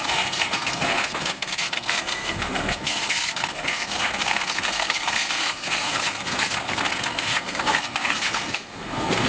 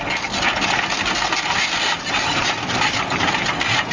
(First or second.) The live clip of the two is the second